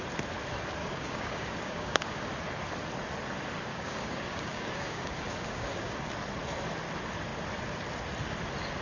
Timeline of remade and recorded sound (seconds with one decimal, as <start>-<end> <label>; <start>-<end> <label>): 0.0-0.8 recorded; 0.8-2.3 remade; 2.3-3.7 recorded; 3.7-6.1 remade; 6.1-8.8 recorded